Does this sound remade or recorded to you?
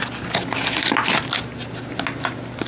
recorded